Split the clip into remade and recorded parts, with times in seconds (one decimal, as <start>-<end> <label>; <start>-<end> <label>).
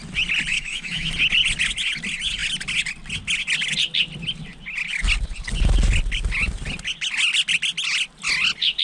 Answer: 0.0-0.5 recorded; 0.5-1.1 remade; 1.1-8.8 recorded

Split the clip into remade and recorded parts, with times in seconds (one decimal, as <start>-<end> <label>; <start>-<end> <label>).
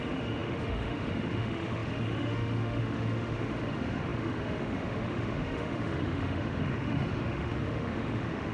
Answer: 0.0-8.5 remade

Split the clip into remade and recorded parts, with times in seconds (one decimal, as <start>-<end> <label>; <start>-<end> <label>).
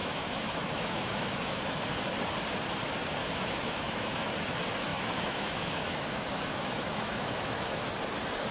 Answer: 0.0-1.6 remade; 1.6-3.2 recorded; 3.2-4.3 remade; 4.3-4.9 recorded; 4.9-7.8 remade; 7.8-8.5 recorded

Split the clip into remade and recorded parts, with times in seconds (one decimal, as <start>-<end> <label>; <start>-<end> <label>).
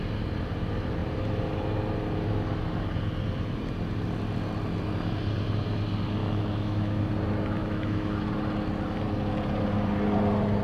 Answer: 0.0-6.2 recorded; 6.2-7.1 remade; 7.1-7.6 recorded; 7.6-8.2 remade; 8.2-10.6 recorded